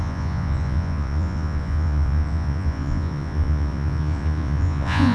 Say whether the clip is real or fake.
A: fake